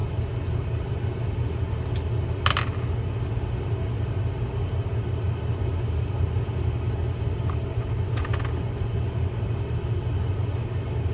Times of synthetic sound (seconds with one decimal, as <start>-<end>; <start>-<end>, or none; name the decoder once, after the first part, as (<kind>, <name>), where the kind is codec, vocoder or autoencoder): none